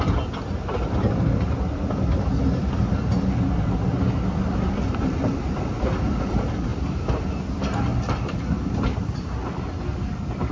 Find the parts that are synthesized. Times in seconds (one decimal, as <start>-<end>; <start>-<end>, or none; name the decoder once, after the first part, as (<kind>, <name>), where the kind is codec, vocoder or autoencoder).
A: none